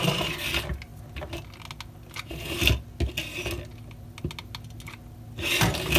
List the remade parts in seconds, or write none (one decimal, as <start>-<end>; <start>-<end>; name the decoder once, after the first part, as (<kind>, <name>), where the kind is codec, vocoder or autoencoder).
none

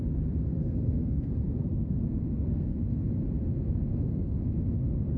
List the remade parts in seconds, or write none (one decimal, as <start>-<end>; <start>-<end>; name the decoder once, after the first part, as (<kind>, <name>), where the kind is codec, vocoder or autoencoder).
0.6-3.1 (codec, SNAC); 3.9-4.4

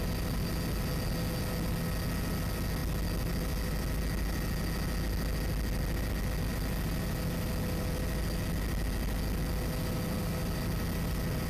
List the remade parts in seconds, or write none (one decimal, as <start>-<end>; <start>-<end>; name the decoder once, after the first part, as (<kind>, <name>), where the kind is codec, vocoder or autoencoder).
none

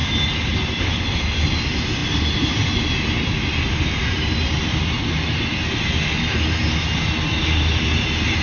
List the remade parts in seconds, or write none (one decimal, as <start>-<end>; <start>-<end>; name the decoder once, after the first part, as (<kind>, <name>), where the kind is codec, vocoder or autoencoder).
none

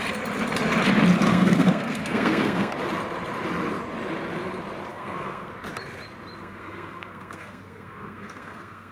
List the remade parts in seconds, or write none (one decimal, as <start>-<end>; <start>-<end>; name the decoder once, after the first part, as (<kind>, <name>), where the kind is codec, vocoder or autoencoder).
1.3-2.7 (codec, SNAC); 4.9-5.5; 6.4-8.9

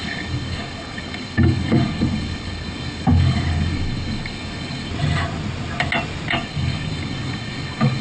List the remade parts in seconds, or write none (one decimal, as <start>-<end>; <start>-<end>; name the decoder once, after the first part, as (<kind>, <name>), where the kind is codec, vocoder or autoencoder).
0.0-4.9 (codec, DAC); 6.3-8.0